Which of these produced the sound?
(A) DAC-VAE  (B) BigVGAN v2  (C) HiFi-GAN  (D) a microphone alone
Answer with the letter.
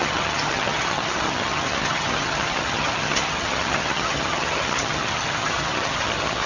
C